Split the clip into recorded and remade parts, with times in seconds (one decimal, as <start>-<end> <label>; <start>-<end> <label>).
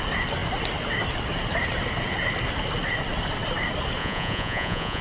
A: 0.0-4.0 recorded; 4.0-5.0 remade